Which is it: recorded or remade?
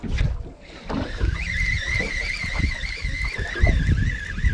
recorded